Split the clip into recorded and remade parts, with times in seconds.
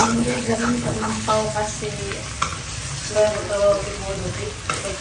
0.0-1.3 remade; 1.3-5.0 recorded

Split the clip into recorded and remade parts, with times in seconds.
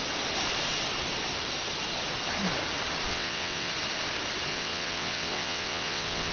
0.0-3.1 recorded; 3.1-3.7 remade; 3.7-4.5 recorded; 4.5-6.3 remade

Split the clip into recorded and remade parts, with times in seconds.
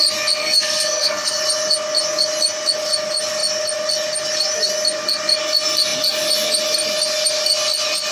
0.0-0.4 recorded; 0.4-1.4 remade; 1.4-8.1 recorded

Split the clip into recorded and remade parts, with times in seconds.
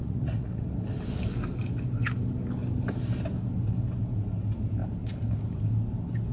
0.0-0.6 remade; 0.6-6.3 recorded